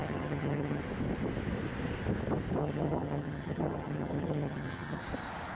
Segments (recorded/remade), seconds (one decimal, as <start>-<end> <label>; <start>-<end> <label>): 0.0-0.8 remade; 0.8-2.6 recorded; 2.6-5.0 remade; 5.0-5.5 recorded